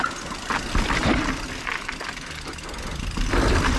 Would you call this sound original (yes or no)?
yes